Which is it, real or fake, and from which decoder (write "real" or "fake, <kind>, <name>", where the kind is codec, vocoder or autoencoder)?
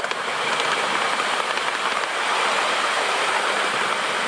real